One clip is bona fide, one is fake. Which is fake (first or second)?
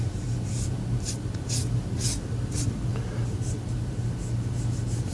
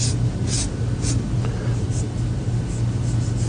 first